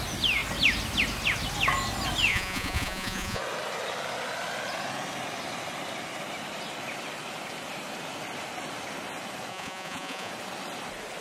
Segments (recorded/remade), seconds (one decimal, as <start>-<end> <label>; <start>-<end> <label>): 0.0-2.3 recorded; 2.3-3.4 remade; 3.4-9.5 recorded; 9.5-10.3 remade; 10.3-11.2 recorded